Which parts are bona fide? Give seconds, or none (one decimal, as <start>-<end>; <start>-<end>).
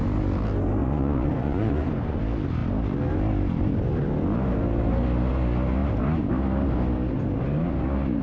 0.0-0.8; 2.2-8.2